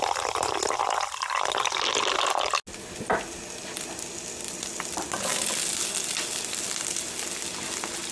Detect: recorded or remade recorded